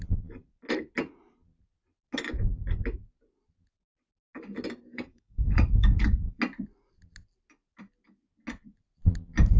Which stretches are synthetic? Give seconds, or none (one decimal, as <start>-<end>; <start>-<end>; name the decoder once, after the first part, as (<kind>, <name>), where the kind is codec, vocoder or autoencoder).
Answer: 4.9-6.4 (codec, DAC)